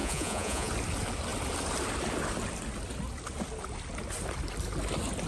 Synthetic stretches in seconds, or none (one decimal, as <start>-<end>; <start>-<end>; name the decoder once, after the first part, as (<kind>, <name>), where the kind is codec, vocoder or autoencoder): 0.0-0.7 (vocoder, Vocos)